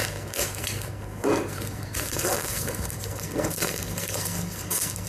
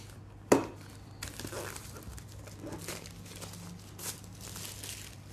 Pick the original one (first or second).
second